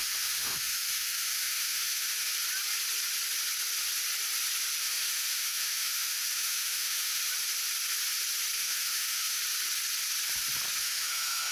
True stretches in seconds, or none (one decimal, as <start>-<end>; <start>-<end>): 2.3-4.8; 7.2-8.6; 9.4-10.8